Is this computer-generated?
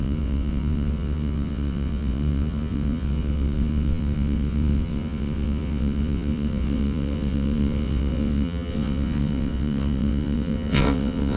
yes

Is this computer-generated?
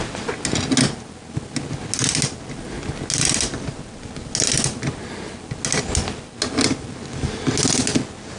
no